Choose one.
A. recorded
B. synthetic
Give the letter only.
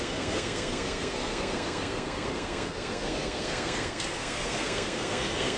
B